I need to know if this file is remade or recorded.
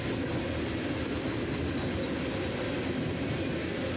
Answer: recorded